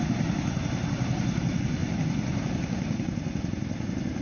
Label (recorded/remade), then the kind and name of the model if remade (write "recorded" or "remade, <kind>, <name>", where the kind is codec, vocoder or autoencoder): recorded